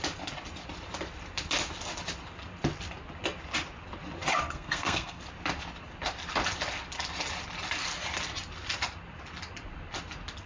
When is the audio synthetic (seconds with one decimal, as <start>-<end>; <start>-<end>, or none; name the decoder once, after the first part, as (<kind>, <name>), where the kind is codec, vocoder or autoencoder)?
4.4-5.2 (codec, SNAC)